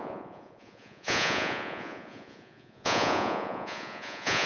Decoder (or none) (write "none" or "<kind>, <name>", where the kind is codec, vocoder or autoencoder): vocoder, Vocos